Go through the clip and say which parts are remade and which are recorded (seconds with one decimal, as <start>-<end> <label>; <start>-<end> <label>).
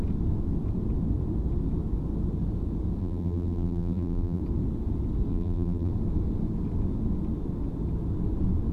0.0-3.0 recorded; 3.0-4.4 remade; 4.4-5.3 recorded; 5.3-5.9 remade; 5.9-8.7 recorded